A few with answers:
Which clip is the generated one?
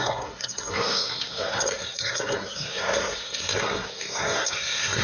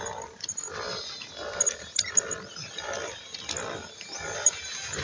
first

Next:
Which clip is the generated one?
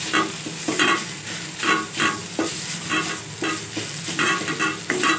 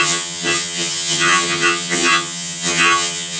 second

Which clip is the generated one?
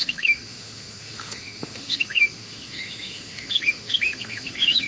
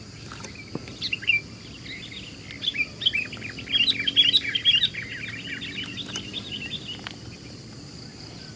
first